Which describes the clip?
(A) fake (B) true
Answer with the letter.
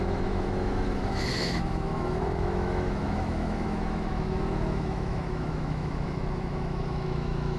A